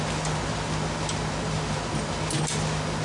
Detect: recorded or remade recorded